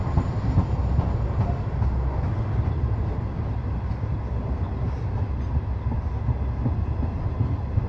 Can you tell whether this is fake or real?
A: real